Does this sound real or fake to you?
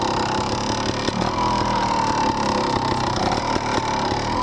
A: real